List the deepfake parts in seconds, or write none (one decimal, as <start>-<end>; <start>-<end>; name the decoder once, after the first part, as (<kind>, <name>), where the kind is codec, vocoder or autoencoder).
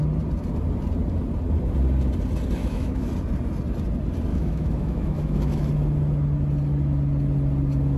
2.6-3.1 (autoencoder, DAC-VAE); 4.3-5.7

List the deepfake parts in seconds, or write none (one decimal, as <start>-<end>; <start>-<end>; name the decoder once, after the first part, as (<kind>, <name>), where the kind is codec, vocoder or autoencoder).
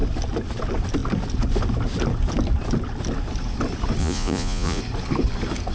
4.0-4.8 (vocoder, Vocos)